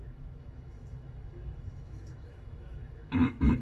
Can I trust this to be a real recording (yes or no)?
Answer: no